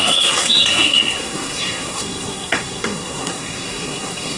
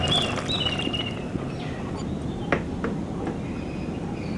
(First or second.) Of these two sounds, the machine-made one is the first